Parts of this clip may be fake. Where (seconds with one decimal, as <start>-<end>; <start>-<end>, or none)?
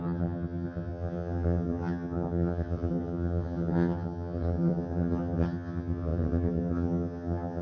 0.0-7.6